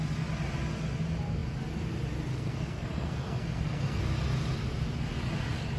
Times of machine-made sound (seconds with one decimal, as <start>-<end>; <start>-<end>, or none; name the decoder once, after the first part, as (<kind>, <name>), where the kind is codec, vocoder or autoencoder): 2.3-4.0 (codec, SNAC)